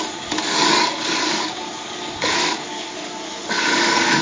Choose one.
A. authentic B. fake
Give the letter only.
B